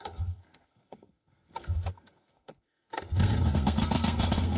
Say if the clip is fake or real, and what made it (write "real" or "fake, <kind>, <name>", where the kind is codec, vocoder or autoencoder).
fake, codec, SNAC